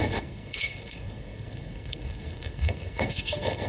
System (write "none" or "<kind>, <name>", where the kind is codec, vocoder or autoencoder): codec, SNAC